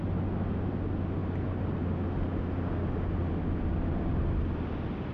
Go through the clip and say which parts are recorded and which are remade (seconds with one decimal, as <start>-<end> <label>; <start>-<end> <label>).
0.0-5.1 recorded